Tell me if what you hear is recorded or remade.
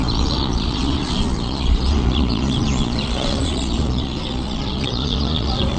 remade